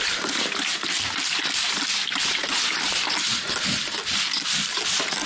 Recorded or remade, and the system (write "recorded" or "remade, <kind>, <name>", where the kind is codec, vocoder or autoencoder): recorded